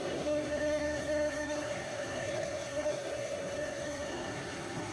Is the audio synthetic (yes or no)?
yes